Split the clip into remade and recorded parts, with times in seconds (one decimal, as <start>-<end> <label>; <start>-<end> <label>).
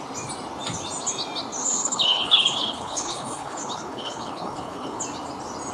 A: 0.0-1.6 recorded; 1.6-5.0 remade; 5.0-5.7 recorded